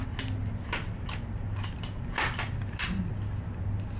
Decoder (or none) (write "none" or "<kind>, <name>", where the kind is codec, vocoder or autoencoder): none